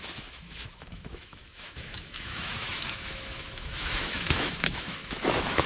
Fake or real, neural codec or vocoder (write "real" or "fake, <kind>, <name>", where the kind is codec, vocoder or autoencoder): fake, autoencoder, DAC-VAE